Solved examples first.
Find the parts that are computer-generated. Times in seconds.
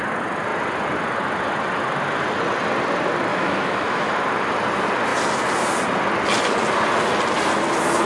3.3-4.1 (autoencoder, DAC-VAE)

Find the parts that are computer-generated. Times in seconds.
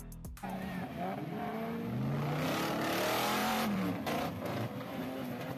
3.4-5.0 (vocoder, BigVGAN v2)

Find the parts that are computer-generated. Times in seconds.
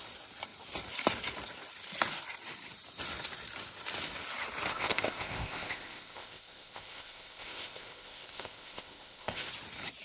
4.7-9.5 (codec, ZipCodec)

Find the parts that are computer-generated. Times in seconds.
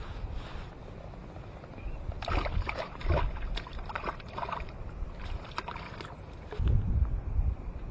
none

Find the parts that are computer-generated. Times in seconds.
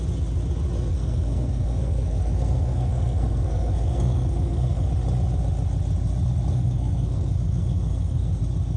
0.9-4.9 (codec, SNAC); 6.5-8.4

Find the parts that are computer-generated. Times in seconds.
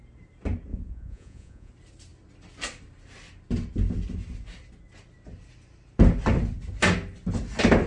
0.7-1.7 (vocoder, Vocos)